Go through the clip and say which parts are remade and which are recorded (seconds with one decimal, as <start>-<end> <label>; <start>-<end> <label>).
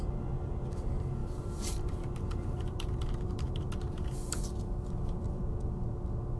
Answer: 0.0-1.2 recorded; 1.2-4.4 remade; 4.4-6.4 recorded